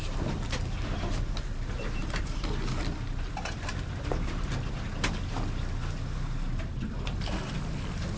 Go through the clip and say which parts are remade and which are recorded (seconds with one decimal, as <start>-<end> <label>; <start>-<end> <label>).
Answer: 0.0-8.2 recorded